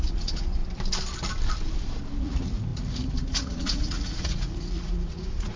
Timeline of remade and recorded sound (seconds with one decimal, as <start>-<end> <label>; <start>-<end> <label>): 0.0-0.6 remade; 0.6-2.2 recorded; 2.2-5.6 remade